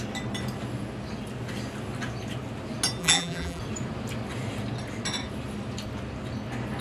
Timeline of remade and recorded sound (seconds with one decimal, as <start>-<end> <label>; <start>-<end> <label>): 0.0-3.0 recorded; 3.0-3.6 remade; 3.6-6.8 recorded